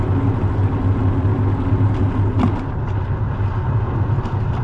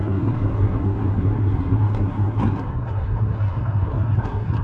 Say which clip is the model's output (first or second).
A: second